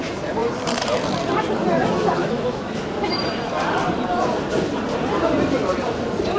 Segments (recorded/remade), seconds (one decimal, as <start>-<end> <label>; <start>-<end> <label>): 0.0-2.2 recorded; 2.2-2.7 remade; 2.7-6.4 recorded